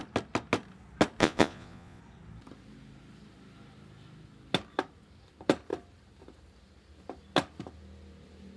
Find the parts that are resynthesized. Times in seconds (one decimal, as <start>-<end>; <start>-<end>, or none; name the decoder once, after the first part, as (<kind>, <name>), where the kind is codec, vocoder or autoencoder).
1.2-2.0 (vocoder, Vocos)

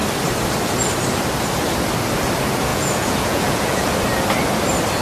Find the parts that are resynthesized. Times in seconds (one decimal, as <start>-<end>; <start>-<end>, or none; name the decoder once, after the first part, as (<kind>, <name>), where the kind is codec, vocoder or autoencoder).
2.7-3.9 (vocoder, Vocos)